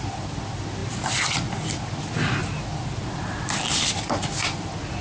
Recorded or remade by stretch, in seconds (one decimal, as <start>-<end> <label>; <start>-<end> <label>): 0.0-5.0 recorded